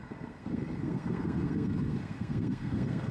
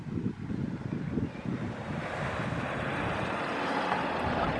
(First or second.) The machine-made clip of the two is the first